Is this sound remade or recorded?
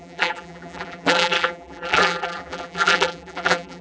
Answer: remade